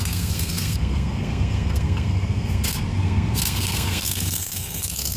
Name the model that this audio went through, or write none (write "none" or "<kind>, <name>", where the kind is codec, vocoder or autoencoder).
codec, SNAC